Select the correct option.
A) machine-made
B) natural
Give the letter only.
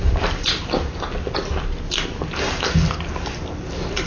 B